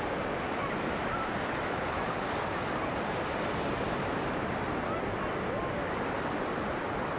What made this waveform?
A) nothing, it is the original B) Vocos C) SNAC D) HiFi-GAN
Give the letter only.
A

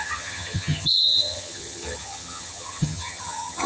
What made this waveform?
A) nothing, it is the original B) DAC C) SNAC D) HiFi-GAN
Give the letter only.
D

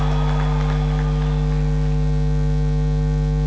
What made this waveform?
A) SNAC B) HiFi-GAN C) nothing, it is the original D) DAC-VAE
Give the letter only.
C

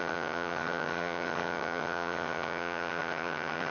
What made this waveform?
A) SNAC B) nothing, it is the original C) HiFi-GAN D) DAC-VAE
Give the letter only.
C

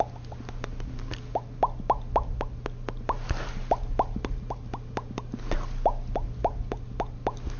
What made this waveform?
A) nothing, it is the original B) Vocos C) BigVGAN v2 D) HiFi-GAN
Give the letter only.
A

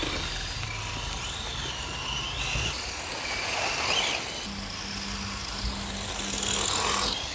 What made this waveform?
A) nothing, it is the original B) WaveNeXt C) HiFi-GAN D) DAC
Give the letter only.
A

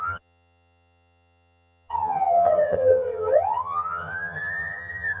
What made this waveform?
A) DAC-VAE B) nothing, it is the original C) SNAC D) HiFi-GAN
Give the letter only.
D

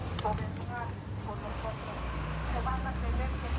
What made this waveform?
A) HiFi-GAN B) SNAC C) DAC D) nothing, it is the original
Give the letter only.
D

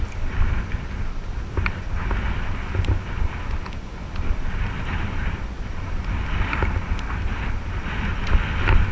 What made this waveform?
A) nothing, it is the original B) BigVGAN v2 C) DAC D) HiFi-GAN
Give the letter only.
A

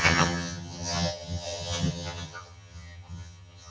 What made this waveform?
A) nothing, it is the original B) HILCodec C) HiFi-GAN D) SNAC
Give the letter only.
C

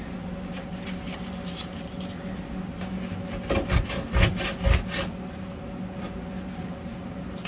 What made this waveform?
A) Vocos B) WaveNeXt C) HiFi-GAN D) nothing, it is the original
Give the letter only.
D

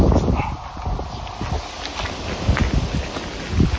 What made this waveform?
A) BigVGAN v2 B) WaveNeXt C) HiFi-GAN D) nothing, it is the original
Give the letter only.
D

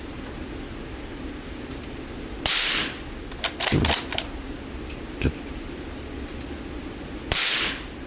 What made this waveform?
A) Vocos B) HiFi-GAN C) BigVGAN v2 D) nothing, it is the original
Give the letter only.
D